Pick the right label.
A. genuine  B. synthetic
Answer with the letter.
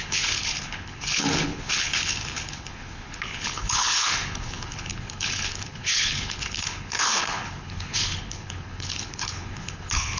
B